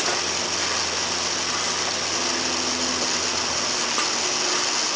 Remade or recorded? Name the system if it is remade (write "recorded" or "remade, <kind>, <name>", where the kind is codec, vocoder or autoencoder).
recorded